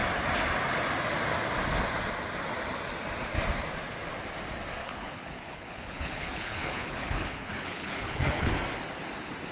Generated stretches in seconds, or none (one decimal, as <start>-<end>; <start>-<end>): 4.8-8.5